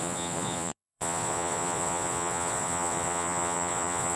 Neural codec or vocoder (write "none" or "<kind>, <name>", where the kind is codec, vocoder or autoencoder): vocoder, Vocos